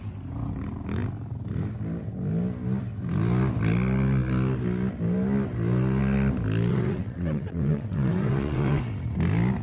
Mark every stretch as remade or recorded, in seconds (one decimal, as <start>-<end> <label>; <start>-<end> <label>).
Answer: 0.0-6.7 recorded; 6.7-8.8 remade; 8.8-9.6 recorded